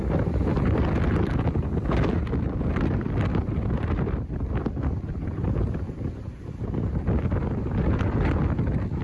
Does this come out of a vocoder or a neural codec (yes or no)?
yes